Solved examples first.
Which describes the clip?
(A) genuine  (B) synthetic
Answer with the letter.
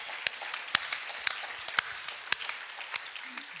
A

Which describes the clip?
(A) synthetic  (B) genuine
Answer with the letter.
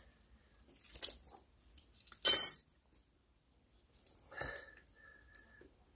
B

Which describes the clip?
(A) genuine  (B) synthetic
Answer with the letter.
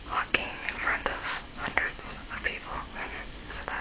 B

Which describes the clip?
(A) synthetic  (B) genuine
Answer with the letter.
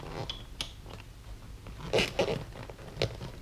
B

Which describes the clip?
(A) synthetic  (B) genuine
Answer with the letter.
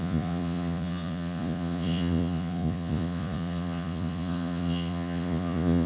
A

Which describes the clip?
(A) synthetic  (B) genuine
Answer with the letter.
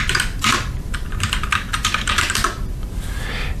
A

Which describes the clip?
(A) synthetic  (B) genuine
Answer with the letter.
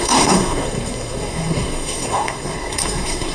A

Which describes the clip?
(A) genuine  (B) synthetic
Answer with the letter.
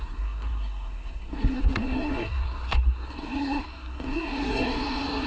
B